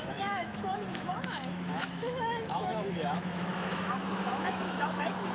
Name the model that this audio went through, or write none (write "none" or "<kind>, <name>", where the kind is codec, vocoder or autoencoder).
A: autoencoder, DAC-VAE